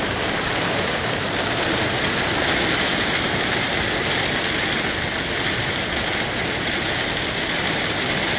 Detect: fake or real real